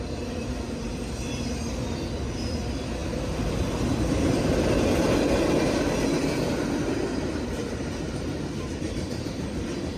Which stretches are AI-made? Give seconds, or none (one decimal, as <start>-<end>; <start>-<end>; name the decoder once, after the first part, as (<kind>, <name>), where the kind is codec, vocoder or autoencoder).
7.6-9.6 (vocoder, BigVGAN v2)